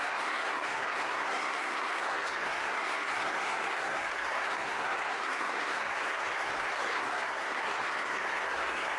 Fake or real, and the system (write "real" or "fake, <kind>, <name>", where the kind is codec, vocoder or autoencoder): fake, codec, SNAC